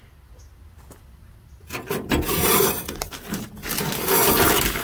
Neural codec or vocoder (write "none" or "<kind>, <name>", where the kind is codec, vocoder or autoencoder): none